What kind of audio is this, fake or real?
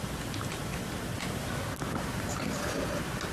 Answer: real